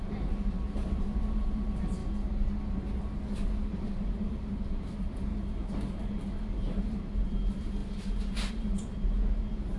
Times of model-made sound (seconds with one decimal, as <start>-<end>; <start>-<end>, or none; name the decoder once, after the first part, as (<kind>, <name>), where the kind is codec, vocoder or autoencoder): 0.0-2.0 (vocoder, BigVGAN v2); 3.7-5.3; 5.9-9.8